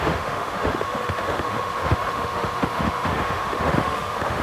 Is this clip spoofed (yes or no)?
yes